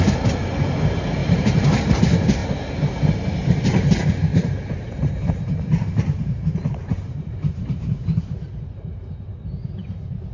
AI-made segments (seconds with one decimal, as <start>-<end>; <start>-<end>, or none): 1.2-2.0; 4.3-8.6